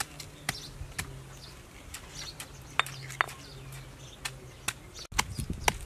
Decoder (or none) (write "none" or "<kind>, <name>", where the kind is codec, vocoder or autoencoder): none